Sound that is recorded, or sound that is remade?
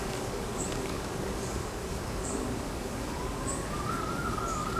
remade